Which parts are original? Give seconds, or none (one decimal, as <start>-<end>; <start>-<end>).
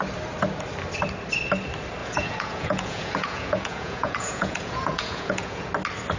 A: 0.0-2.0; 5.7-6.2